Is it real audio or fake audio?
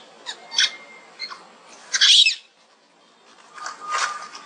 real